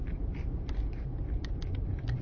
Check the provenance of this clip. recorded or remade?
remade